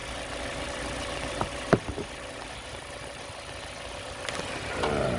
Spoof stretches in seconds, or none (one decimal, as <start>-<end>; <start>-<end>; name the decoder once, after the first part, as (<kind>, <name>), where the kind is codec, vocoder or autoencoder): none